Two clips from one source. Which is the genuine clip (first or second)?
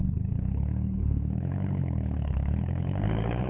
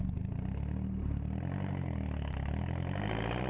second